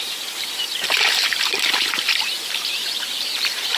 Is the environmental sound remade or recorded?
remade